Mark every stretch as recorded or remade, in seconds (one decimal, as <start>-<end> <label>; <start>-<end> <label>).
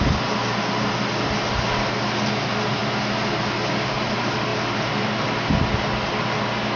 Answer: 0.0-6.8 recorded